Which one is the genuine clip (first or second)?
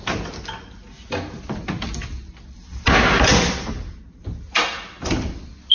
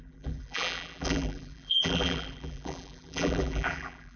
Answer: first